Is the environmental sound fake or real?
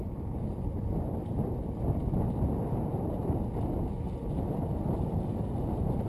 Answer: real